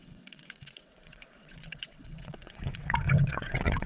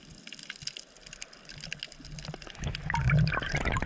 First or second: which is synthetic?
first